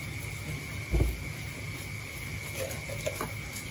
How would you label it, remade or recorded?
recorded